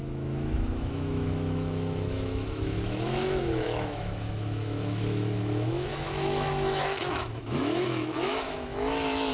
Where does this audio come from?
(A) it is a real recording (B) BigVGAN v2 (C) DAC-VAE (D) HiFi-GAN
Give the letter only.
C